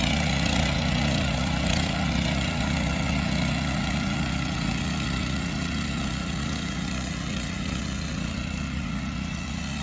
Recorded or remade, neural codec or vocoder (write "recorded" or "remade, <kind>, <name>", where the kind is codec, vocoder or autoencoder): remade, vocoder, Vocos